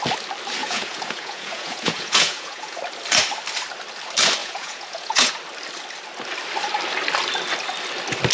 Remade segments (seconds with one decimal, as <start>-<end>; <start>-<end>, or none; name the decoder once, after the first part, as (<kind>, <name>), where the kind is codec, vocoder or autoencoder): 0.6-2.8 (vocoder, Vocos); 4.4-5.3